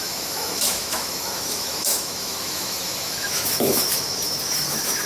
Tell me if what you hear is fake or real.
fake